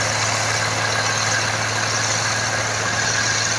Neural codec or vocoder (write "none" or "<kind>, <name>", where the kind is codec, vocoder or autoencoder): none